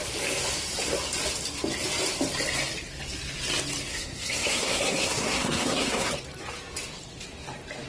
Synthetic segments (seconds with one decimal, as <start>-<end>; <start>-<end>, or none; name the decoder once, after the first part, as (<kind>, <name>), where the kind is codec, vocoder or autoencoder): 3.9-6.1 (codec, SNAC)